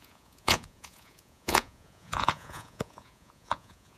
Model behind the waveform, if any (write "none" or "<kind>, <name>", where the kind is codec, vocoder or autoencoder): vocoder, Vocos